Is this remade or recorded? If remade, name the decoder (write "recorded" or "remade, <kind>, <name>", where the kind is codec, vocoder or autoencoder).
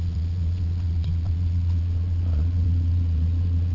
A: remade, vocoder, Vocos